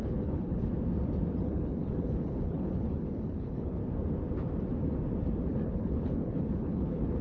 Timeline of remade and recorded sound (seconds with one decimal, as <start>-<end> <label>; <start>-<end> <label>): 0.0-0.7 remade; 0.7-1.4 recorded; 1.4-3.8 remade; 3.8-5.5 recorded; 5.5-7.2 remade